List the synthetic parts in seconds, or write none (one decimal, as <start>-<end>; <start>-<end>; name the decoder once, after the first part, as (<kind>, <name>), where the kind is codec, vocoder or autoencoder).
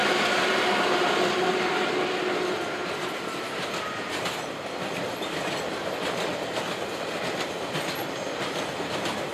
none